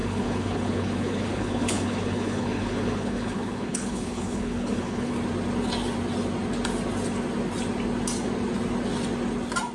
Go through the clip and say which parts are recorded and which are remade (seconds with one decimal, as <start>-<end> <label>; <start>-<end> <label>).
0.0-5.1 remade; 5.1-9.7 recorded